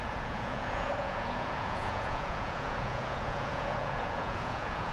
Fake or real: fake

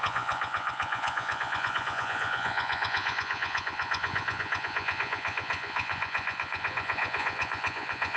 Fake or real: fake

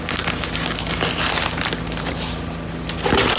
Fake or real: real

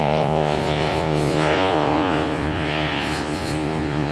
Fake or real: fake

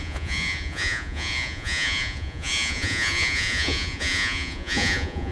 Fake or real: fake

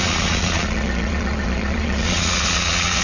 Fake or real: fake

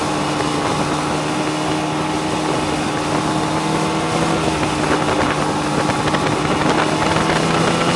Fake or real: real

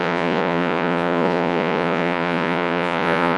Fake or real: fake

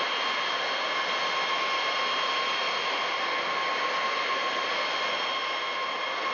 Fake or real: real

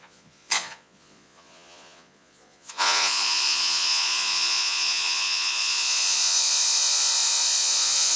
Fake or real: fake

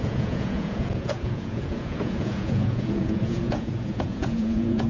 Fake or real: fake